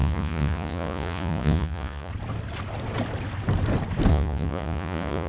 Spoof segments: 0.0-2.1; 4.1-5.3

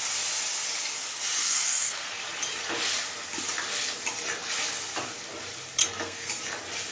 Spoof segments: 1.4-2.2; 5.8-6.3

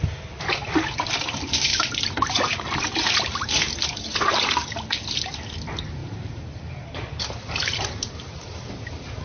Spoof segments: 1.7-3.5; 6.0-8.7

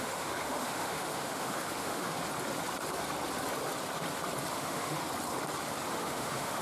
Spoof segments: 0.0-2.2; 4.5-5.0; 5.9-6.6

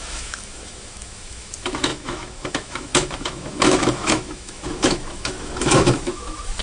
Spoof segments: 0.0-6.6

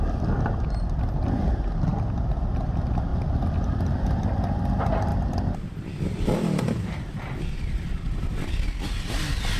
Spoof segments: 3.1-4.2; 5.1-6.9

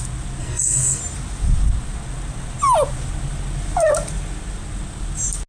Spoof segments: 0.4-1.0